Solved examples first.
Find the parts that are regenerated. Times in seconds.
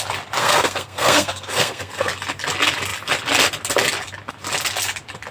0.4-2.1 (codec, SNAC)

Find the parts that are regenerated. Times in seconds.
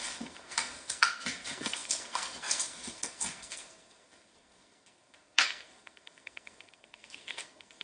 0.0-7.8 (codec, SNAC)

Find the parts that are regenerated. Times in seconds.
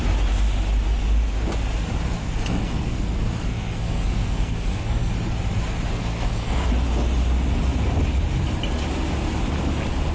2.2-5.1 (codec, SNAC); 5.9-6.7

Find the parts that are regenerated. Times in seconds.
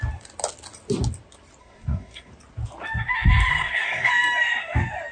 1.6-2.3 (codec, SNAC); 3.5-4.1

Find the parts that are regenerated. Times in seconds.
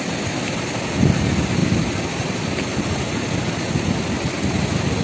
none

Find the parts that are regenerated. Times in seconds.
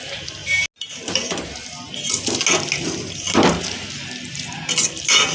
none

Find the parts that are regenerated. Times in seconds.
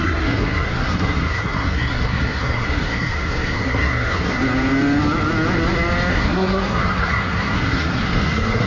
0.0-4.4 (codec, SNAC); 6.1-8.7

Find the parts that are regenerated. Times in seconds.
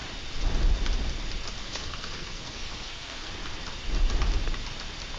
1.6-3.3 (codec, SNAC)